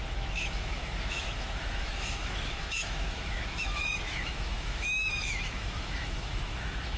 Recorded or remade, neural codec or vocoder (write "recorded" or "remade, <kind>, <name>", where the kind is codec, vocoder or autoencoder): remade, autoencoder, DAC-VAE